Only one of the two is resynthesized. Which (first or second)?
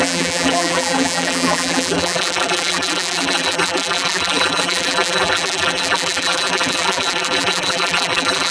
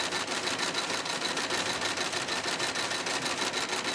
first